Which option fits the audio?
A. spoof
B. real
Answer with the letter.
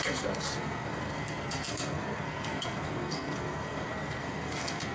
A